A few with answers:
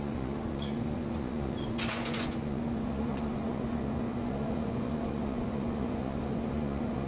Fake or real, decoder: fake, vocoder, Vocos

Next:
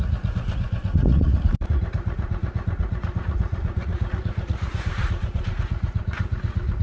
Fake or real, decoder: fake, vocoder, Vocos